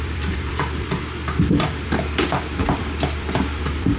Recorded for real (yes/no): no